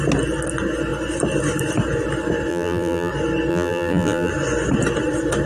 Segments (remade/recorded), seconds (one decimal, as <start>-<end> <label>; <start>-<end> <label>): 0.0-2.5 recorded; 2.5-3.1 remade; 3.1-3.5 recorded; 3.5-4.3 remade; 4.3-5.5 recorded